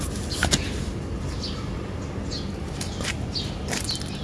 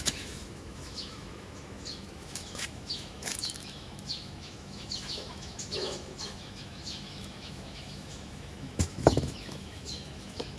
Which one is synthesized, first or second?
second